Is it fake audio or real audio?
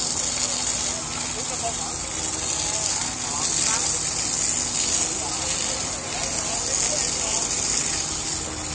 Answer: real